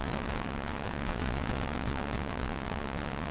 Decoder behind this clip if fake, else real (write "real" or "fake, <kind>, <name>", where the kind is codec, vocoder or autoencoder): fake, vocoder, WaveNeXt